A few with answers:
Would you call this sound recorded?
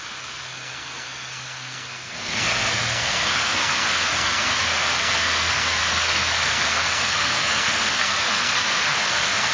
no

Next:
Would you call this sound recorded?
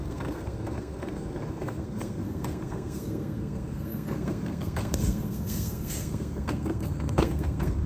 no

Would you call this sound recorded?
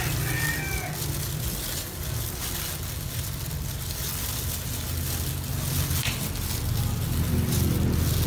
yes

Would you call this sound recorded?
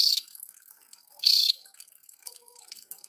no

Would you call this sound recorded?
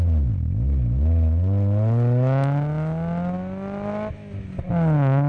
yes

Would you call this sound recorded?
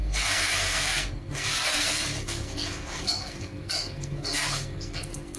no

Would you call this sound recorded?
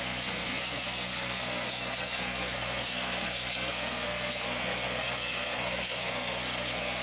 no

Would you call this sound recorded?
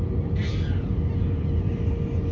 yes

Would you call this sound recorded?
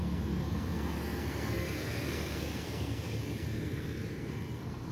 no